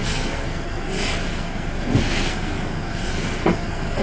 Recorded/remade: remade